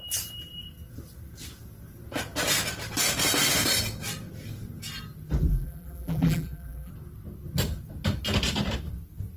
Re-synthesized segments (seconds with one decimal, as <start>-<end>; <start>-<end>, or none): 5.5-6.9